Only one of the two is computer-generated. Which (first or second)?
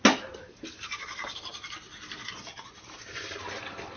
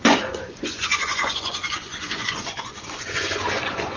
second